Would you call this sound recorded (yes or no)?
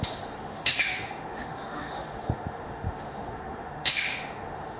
no